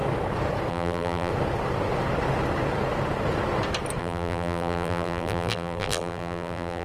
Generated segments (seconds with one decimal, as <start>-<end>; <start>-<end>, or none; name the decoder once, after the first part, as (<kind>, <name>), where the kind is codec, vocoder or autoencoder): 0.7-1.3 (vocoder, BigVGAN v2); 4.0-6.8